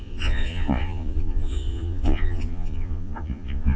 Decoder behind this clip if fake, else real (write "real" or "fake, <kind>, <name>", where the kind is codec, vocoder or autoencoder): fake, vocoder, Vocos